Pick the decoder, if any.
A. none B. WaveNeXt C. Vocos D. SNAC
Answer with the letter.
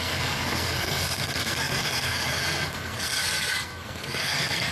D